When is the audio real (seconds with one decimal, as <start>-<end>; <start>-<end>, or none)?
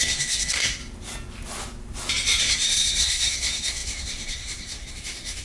0.8-2.4